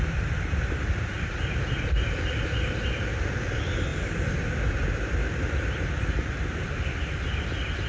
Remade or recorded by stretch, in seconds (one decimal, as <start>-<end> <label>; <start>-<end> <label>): 0.0-7.9 recorded